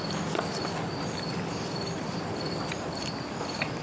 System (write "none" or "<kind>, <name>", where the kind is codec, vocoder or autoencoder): none